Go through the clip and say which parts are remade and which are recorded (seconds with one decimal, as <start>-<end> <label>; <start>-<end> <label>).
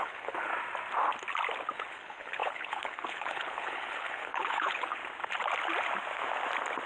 0.0-0.5 remade; 0.5-1.9 recorded; 1.9-5.0 remade; 5.0-6.9 recorded